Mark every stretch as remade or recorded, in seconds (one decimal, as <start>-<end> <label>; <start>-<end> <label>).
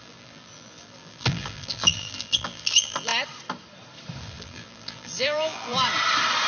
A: 0.0-3.1 remade; 3.1-4.2 recorded; 4.2-5.7 remade; 5.7-6.5 recorded